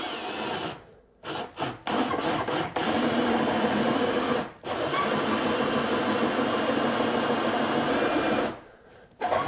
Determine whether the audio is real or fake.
real